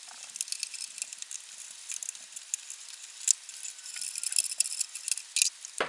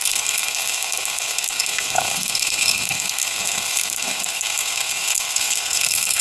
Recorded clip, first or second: first